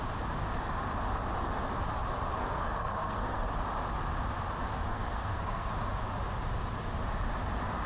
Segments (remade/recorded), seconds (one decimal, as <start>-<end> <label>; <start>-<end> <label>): 0.0-2.4 recorded; 2.4-3.5 remade; 3.5-4.9 recorded; 4.9-5.7 remade; 5.7-7.9 recorded